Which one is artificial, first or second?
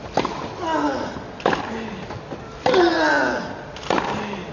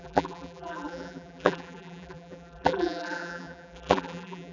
second